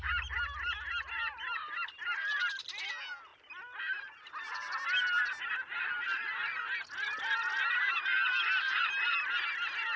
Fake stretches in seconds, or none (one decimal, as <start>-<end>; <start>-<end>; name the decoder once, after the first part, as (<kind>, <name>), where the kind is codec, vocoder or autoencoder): none

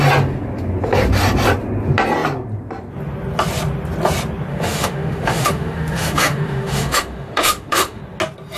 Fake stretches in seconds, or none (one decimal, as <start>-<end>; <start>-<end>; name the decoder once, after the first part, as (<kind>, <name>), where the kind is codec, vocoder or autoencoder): 4.5-8.0 (autoencoder, DAC-VAE)

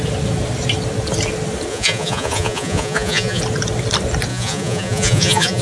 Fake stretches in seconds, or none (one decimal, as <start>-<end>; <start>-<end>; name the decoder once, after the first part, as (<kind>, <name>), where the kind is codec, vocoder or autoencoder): 1.7-3.4 (vocoder, Vocos); 4.3-5.6

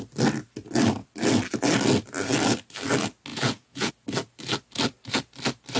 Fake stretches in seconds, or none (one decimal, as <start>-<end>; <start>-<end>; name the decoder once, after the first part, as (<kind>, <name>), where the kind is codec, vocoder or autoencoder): 3.3-3.9 (vocoder, Vocos)

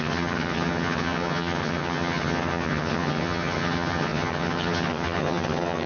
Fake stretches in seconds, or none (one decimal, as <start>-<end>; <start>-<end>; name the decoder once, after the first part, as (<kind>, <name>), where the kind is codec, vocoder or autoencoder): 0.0-5.9 (vocoder, HiFi-GAN)